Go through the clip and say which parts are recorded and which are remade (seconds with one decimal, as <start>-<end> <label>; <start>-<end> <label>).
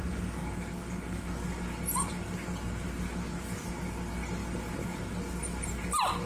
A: 0.0-6.3 recorded